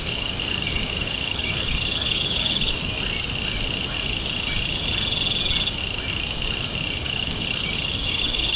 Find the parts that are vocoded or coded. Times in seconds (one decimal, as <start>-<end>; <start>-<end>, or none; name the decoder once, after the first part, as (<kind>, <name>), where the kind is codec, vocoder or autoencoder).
0.0-2.9 (codec, DAC); 7.0-8.6